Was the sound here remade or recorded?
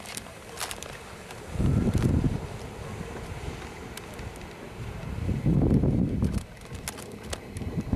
recorded